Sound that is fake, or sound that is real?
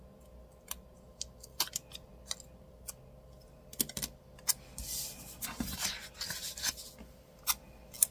real